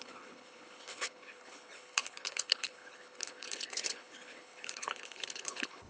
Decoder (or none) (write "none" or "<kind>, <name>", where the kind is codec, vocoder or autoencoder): codec, HILCodec